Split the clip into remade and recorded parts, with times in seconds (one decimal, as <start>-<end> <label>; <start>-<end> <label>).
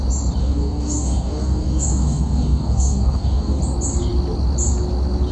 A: 0.0-0.4 recorded; 0.4-3.6 remade; 3.6-5.3 recorded